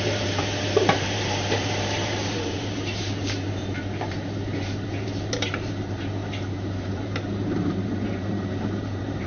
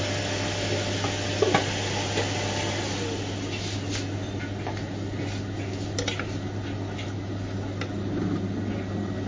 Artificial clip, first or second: first